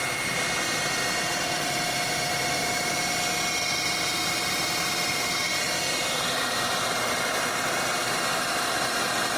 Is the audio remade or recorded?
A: recorded